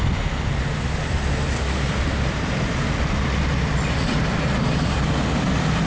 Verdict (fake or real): real